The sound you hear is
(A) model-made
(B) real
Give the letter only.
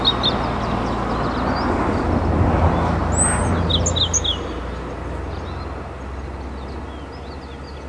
B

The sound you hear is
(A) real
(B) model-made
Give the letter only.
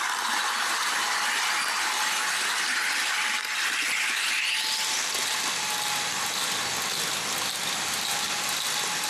A